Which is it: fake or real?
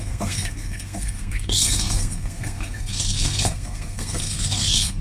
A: fake